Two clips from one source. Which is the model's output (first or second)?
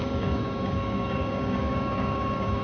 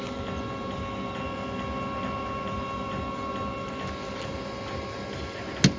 first